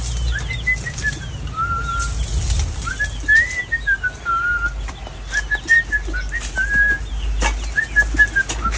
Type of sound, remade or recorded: recorded